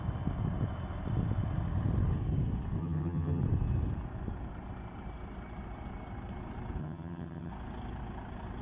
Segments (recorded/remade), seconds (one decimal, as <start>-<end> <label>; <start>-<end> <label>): 0.0-2.8 recorded; 2.8-3.4 remade; 3.4-6.8 recorded; 6.8-7.5 remade; 7.5-8.6 recorded